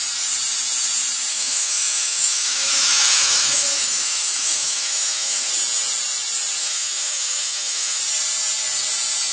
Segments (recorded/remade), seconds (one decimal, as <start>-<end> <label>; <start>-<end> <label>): 0.0-1.3 recorded; 1.3-5.5 remade; 5.5-6.6 recorded; 6.6-8.0 remade; 8.0-9.3 recorded